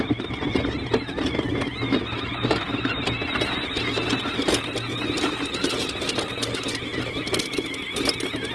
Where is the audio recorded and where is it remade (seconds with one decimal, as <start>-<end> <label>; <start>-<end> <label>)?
0.0-8.5 recorded